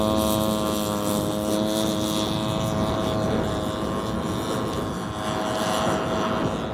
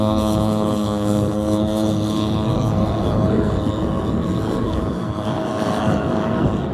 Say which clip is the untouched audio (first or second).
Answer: first